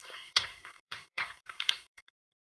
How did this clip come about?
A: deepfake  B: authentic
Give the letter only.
A